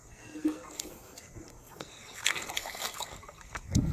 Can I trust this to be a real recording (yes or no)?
no